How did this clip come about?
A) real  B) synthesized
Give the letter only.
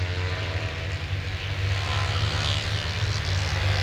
A